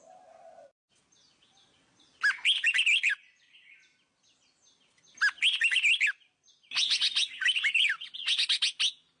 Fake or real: real